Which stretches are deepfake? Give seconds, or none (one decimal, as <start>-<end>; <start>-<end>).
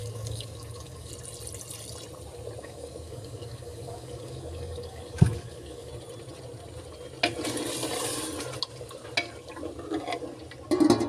0.0-1.1; 2.6-5.9